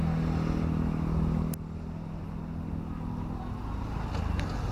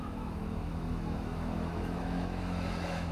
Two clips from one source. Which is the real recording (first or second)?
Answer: first